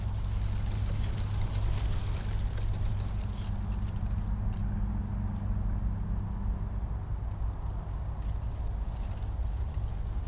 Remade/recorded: recorded